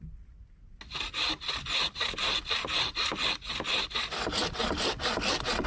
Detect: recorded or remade recorded